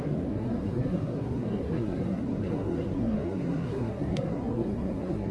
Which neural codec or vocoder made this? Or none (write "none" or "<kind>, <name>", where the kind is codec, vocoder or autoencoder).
codec, SNAC